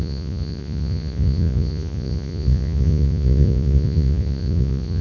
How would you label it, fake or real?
fake